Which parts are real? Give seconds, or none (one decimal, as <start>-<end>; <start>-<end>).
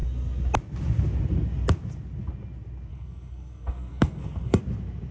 0.0-2.9; 4.6-5.1